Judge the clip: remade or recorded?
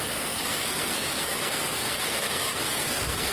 remade